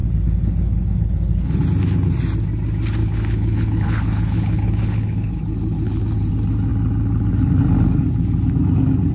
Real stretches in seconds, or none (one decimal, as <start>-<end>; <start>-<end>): 1.6-3.0; 6.3-9.1

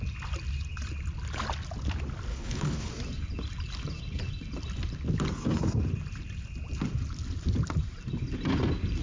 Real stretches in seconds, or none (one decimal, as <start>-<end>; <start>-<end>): 0.0-2.3; 2.9-9.0

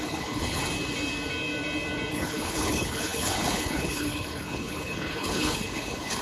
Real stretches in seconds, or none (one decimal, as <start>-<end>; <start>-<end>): 0.6-2.1

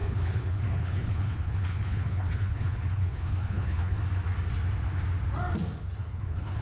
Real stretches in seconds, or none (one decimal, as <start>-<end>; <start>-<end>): 4.0-6.0

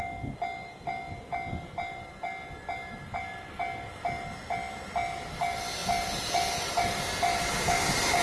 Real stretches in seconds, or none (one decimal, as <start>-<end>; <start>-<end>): 0.0-8.2